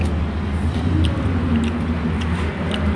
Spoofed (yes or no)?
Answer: no